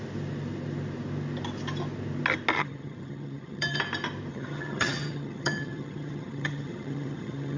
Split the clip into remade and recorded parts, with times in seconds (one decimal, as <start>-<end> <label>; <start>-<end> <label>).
0.0-2.6 recorded; 2.6-3.8 remade; 3.8-4.3 recorded; 4.3-7.6 remade